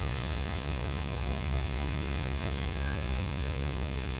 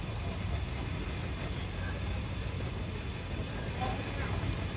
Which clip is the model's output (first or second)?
first